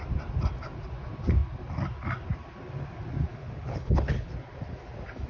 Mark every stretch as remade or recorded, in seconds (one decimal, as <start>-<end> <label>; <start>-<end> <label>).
0.0-3.3 recorded; 3.3-4.3 remade; 4.3-5.3 recorded

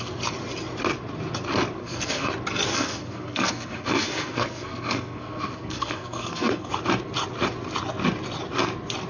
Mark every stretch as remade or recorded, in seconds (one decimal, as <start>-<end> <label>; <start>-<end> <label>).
0.0-1.8 recorded; 1.8-2.3 remade; 2.3-2.7 recorded; 2.7-6.7 remade; 6.7-9.1 recorded

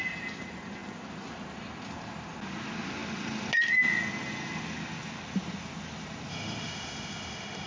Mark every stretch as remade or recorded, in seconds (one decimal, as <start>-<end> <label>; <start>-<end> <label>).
0.0-6.3 recorded; 6.3-7.7 remade

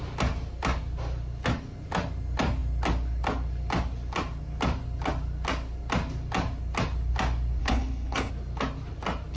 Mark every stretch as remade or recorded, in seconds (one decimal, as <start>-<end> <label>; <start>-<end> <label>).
0.0-7.6 recorded; 7.6-8.3 remade; 8.3-9.4 recorded